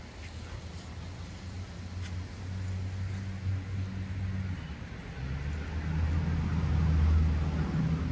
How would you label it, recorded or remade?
recorded